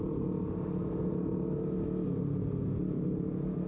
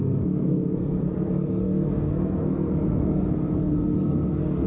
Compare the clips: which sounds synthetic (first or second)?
second